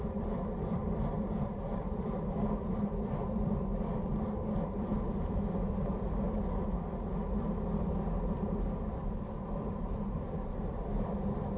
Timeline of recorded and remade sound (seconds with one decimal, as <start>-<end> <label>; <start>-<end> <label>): 0.0-3.7 remade; 3.7-4.4 recorded; 4.4-5.9 remade; 5.9-9.7 recorded; 9.7-11.6 remade